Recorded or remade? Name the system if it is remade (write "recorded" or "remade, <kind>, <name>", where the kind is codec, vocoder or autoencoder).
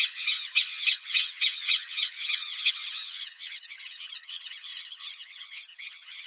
remade, vocoder, HiFi-GAN